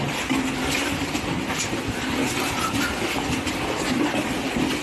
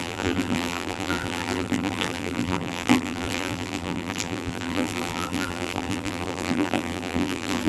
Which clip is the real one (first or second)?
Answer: first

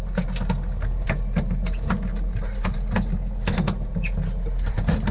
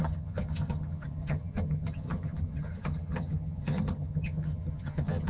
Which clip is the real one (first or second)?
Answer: first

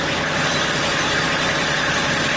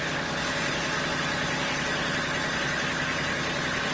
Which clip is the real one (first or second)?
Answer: second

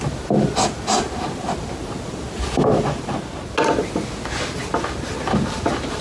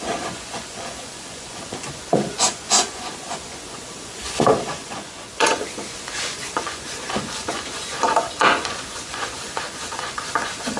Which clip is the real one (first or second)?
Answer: first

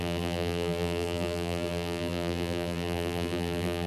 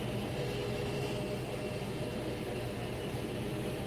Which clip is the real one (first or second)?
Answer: second